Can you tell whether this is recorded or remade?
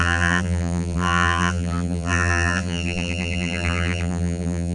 remade